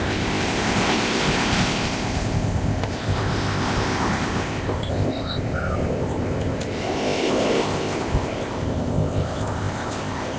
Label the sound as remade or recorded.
remade